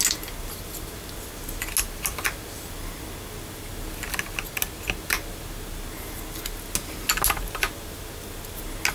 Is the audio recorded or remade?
recorded